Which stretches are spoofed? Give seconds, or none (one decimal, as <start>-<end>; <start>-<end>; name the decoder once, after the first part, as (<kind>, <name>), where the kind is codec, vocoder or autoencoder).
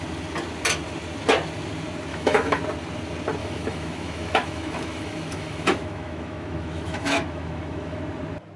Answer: 2.1-2.6 (autoencoder, DAC-VAE); 3.4-8.0